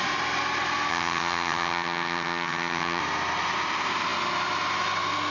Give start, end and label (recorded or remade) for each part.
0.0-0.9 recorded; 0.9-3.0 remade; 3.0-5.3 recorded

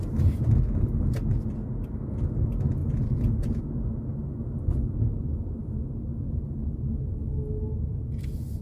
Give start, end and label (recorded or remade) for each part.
0.0-2.8 recorded; 2.8-3.6 remade; 3.6-8.6 recorded

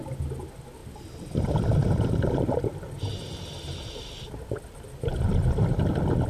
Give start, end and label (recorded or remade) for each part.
0.0-6.3 recorded

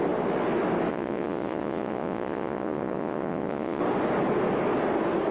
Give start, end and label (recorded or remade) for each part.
0.0-0.9 recorded; 0.9-3.8 remade; 3.8-5.3 recorded

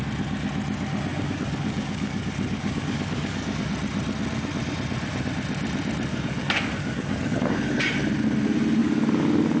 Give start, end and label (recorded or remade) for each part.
0.0-1.1 recorded; 1.1-3.7 remade; 3.7-6.1 recorded; 6.1-7.9 remade; 7.9-8.8 recorded; 8.8-9.6 remade

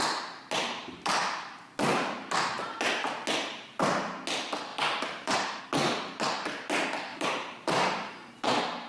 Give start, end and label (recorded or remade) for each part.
0.0-4.7 recorded; 4.7-5.6 remade; 5.6-7.1 recorded; 7.1-8.3 remade; 8.3-8.9 recorded